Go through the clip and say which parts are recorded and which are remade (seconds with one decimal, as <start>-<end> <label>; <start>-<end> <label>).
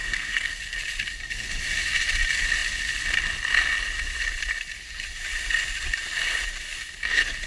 0.0-0.6 remade; 0.6-7.5 recorded